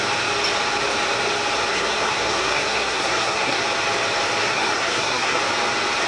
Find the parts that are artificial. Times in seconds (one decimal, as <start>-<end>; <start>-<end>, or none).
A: 1.7-3.6; 4.4-5.4